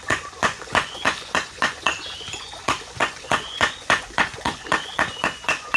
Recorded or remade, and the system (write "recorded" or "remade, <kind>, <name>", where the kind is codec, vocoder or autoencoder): remade, vocoder, Vocos